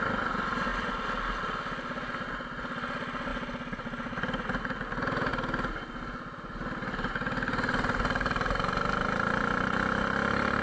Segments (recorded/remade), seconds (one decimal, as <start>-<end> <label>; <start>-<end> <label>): 0.0-10.6 recorded